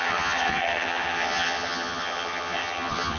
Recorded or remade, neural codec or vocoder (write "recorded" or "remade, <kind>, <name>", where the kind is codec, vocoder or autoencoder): remade, vocoder, HiFi-GAN